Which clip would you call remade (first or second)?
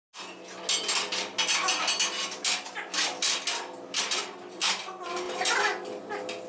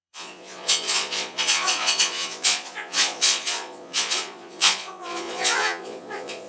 second